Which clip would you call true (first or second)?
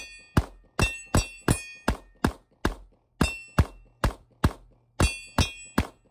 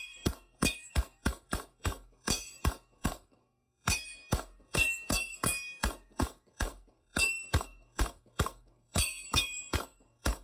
first